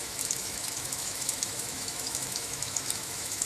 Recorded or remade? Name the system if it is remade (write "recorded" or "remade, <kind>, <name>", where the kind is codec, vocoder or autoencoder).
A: remade, autoencoder, DAC-VAE